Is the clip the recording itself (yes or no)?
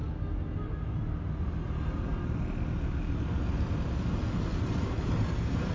yes